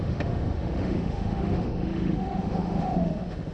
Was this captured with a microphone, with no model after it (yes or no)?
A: no